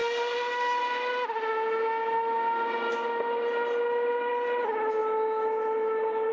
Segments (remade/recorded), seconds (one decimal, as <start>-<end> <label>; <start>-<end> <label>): 0.0-6.3 recorded